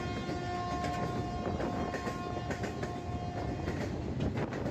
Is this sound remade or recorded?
recorded